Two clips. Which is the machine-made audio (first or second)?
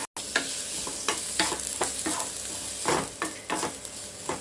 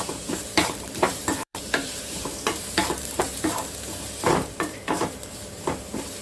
second